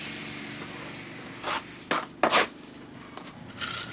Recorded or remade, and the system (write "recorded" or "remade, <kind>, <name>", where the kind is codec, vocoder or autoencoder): recorded